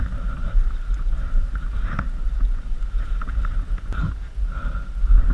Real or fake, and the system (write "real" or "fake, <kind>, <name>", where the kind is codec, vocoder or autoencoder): real